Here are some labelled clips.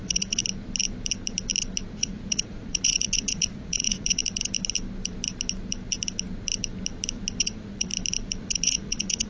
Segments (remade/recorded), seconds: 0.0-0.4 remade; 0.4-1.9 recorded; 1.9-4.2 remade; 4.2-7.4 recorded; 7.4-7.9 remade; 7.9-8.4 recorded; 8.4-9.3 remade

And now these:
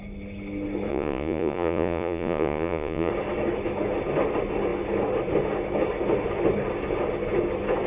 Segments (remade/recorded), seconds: 0.0-0.9 recorded; 0.9-3.1 remade; 3.1-7.9 recorded

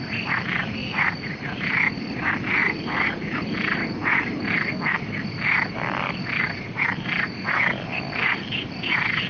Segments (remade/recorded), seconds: 0.0-0.8 recorded; 0.8-1.6 remade; 1.6-2.6 recorded; 2.6-3.4 remade; 3.4-9.3 recorded

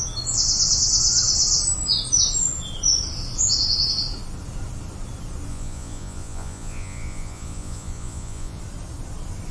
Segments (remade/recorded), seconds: 0.0-5.5 recorded; 5.5-8.6 remade; 8.6-9.5 recorded

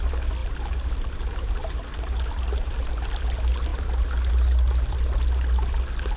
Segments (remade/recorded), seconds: 0.0-6.2 recorded